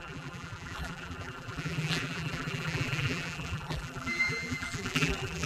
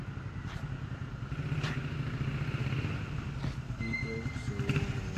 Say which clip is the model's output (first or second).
first